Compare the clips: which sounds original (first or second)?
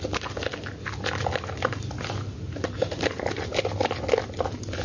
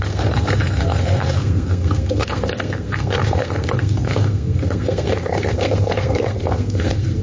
first